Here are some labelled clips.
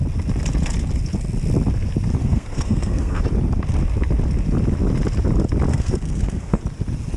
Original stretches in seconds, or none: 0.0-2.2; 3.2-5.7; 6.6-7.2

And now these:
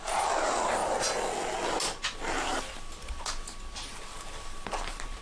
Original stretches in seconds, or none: 0.8-3.9